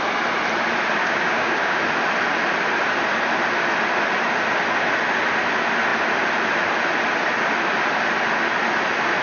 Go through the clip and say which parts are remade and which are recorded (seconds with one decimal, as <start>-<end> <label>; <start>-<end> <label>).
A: 0.0-1.0 recorded; 1.0-1.8 remade; 1.8-9.2 recorded